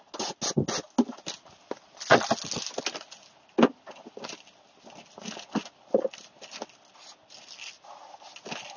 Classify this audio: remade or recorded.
recorded